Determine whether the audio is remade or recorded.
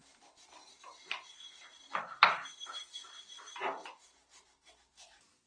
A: recorded